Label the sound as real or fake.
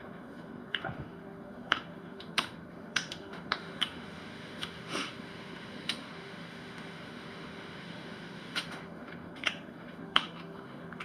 fake